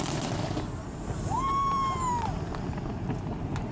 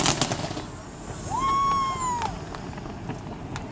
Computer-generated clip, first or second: first